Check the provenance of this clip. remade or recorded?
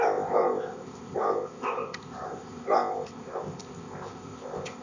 remade